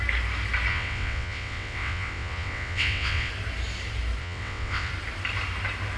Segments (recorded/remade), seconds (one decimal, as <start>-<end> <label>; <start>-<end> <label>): 0.0-0.7 recorded; 0.7-3.3 remade; 3.3-4.2 recorded; 4.2-4.9 remade; 4.9-6.0 recorded